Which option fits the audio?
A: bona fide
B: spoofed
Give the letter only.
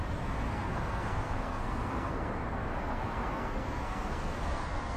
B